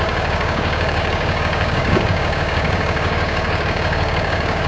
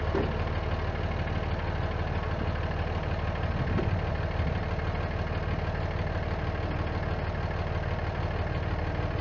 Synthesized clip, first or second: first